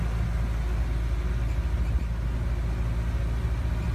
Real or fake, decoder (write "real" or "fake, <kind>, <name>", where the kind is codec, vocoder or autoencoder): real